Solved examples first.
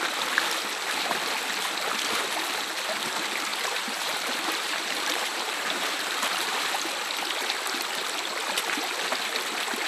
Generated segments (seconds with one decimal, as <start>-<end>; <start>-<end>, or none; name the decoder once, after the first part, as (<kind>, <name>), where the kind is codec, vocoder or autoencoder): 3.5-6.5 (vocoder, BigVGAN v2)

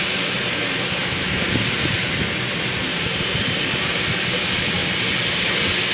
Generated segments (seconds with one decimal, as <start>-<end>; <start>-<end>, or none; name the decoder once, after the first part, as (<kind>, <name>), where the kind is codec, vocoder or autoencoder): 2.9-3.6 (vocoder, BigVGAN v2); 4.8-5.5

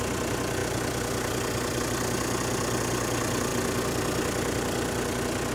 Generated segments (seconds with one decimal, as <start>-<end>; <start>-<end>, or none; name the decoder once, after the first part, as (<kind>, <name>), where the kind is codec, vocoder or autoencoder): none

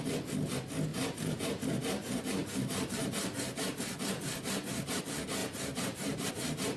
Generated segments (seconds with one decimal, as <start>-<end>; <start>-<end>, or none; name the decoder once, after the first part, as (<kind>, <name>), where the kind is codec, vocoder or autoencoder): 0.9-5.0 (vocoder, BigVGAN v2); 5.4-6.3

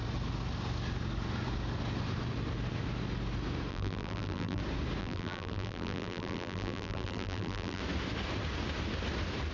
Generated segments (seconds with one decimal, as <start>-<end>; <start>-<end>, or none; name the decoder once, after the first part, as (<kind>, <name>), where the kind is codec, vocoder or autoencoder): 3.7-4.6 (vocoder, BigVGAN v2); 5.0-7.8

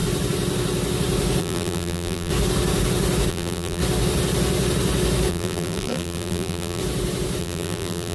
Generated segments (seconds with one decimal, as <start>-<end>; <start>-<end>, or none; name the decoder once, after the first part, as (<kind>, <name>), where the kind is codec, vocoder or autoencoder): 1.4-2.3 (vocoder, BigVGAN v2); 3.3-3.8; 5.3-6.8; 7.4-8.1